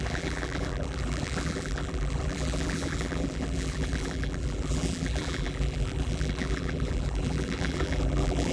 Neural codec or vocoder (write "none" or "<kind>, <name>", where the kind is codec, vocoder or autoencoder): vocoder, BigVGAN v2